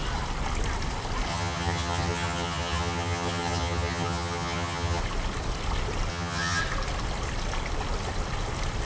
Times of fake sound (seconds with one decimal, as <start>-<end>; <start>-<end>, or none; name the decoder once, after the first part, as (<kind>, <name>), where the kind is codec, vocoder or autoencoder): 1.3-5.0 (vocoder, HiFi-GAN); 6.1-6.6